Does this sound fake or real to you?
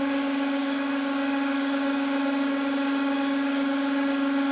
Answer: fake